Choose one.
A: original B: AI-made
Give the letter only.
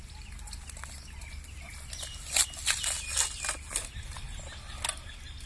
A